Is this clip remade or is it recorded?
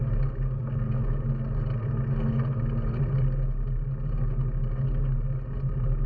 recorded